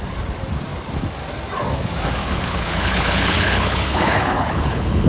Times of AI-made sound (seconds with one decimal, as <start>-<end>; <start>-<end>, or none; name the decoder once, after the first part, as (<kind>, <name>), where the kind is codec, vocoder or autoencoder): 2.2-5.1 (codec, HILCodec)